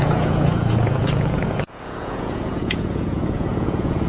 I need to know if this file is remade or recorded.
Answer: remade